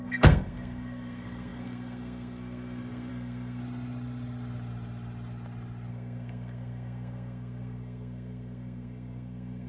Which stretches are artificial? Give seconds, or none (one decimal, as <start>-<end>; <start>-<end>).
0.0-3.6; 5.9-9.7